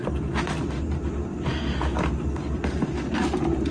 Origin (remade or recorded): recorded